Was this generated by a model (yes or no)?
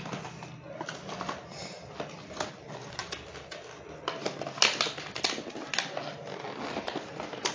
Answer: no